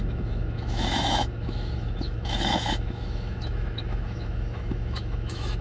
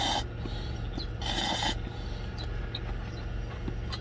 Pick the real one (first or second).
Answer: second